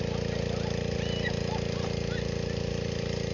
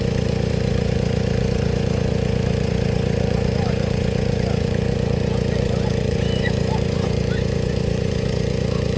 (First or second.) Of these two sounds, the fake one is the second